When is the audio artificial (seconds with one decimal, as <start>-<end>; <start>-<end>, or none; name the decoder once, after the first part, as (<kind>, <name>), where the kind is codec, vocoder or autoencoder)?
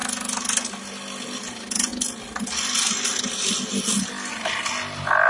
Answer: none